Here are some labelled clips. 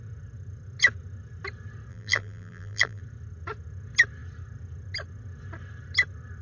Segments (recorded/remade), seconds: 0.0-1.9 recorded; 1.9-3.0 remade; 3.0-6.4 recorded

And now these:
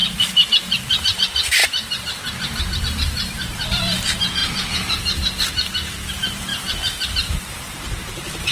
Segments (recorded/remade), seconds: 0.0-0.9 recorded; 0.9-6.5 remade; 6.5-7.3 recorded; 7.3-8.5 remade

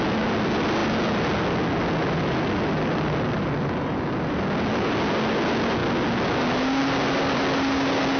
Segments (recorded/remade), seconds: 0.0-8.2 recorded

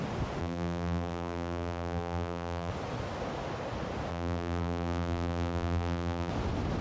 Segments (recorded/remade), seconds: 0.0-0.4 recorded; 0.4-2.7 remade; 2.7-4.1 recorded; 4.1-6.3 remade; 6.3-6.8 recorded

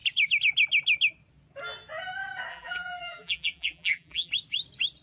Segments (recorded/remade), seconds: 0.0-2.5 recorded; 2.5-4.3 remade; 4.3-5.0 recorded